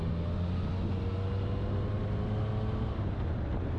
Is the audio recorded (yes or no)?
yes